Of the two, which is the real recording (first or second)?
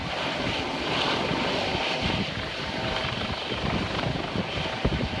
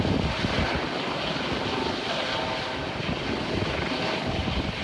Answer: second